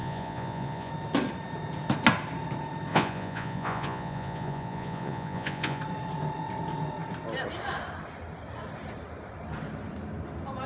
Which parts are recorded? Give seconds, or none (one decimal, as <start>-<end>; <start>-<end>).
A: 0.9-2.9; 5.8-10.7